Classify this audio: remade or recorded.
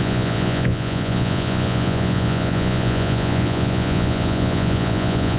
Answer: remade